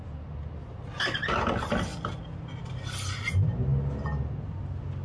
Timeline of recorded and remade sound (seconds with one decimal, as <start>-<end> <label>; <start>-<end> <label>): 0.0-5.0 recorded